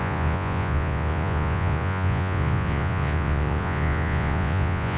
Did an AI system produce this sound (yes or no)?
yes